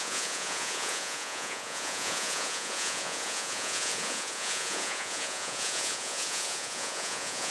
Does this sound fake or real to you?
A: fake